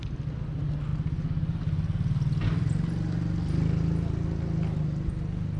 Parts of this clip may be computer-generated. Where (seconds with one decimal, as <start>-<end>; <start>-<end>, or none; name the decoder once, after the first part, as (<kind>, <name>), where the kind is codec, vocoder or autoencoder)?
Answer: none